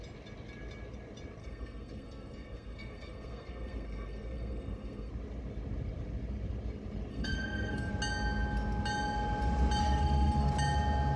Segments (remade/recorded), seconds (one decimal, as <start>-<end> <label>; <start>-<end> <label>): 0.0-1.4 recorded; 1.4-5.1 remade; 5.1-7.1 recorded; 7.1-7.9 remade; 7.9-9.8 recorded; 9.8-10.5 remade; 10.5-11.2 recorded